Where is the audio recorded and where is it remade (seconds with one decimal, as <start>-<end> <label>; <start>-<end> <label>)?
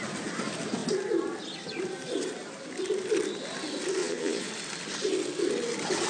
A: 0.0-4.0 recorded; 4.0-4.5 remade; 4.5-6.1 recorded